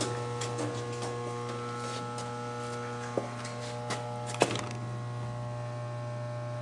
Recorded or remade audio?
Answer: recorded